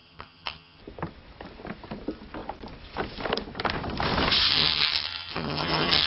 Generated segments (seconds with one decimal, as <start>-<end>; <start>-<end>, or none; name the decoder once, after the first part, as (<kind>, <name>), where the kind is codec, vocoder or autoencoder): 0.0-0.8 (vocoder, HiFi-GAN); 4.5-6.1